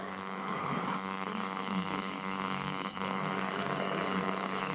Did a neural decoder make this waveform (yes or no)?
yes